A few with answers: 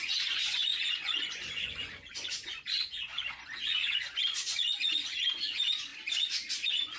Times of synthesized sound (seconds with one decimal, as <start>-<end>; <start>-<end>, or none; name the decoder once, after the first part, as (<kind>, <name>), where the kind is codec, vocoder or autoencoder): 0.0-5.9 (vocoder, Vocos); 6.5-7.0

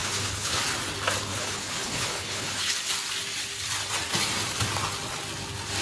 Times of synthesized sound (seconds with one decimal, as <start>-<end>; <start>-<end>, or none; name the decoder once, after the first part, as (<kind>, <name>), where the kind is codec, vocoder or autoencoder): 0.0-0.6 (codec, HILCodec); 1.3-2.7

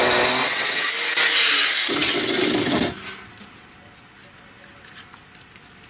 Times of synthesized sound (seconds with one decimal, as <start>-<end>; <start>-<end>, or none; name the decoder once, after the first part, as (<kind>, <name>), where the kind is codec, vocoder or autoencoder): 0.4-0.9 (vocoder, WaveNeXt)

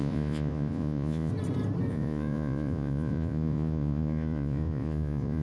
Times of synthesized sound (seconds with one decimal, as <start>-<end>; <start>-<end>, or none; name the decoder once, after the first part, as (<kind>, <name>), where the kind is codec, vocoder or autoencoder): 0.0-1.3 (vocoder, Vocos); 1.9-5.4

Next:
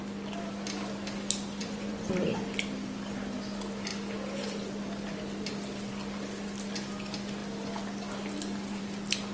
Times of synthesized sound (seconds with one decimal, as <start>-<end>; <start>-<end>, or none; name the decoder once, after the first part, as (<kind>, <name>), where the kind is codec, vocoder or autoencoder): 1.6-2.1 (vocoder, Vocos)

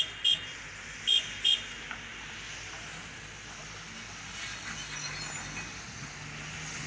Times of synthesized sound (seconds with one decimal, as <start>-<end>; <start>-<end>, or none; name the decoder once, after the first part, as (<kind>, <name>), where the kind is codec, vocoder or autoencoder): none

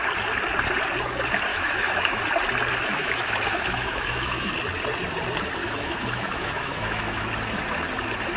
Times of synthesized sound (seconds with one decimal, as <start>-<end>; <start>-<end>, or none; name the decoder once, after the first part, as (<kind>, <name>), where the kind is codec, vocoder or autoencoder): 1.5-2.2 (autoencoder, DAC-VAE); 2.9-4.5; 5.6-7.3

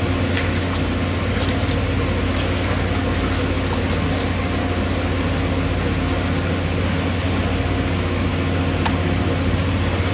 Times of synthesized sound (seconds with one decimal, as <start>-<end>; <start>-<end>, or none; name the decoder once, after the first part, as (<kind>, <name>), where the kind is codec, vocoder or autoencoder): none